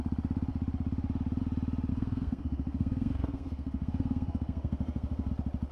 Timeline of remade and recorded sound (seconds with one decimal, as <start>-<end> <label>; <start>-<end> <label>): 0.0-1.9 recorded; 1.9-5.3 remade; 5.3-5.7 recorded